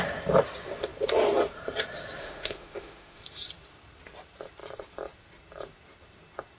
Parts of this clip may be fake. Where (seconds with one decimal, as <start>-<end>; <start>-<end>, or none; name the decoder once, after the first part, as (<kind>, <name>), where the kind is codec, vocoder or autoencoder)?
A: 2.2-3.2 (autoencoder, DAC-VAE)